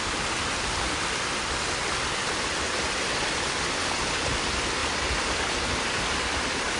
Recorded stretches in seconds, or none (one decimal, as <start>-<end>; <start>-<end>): none